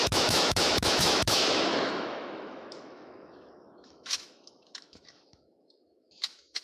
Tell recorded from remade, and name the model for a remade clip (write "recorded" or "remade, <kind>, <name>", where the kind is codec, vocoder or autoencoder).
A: remade, autoencoder, DAC-VAE